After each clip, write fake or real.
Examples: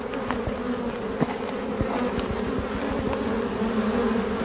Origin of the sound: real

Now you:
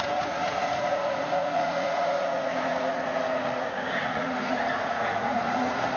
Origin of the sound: fake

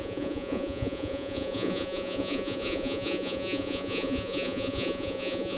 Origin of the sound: fake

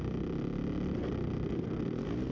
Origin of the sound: real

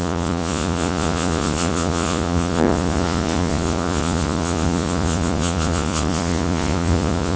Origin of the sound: fake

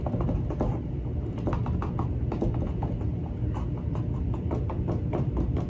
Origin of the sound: real